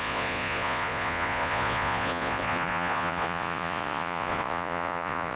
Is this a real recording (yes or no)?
no